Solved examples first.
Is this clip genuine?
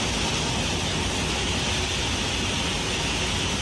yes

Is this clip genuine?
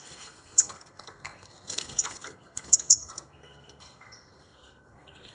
no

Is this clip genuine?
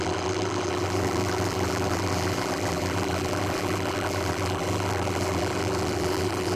no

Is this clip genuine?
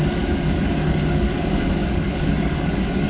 no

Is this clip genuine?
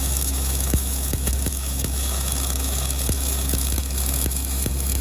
no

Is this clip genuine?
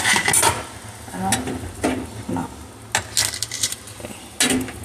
yes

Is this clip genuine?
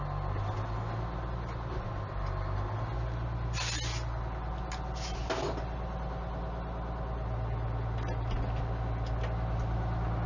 yes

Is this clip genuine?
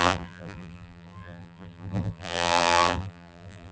no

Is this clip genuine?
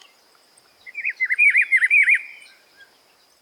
no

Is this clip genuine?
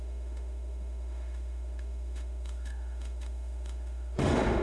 no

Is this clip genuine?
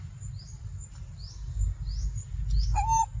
yes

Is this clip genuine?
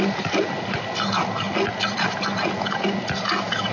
yes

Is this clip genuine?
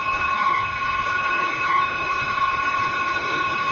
no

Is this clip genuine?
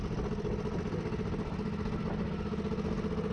yes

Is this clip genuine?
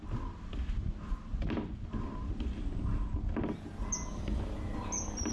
yes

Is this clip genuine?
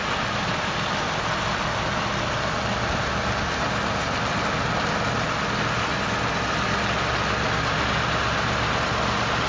yes